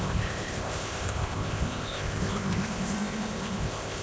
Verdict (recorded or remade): remade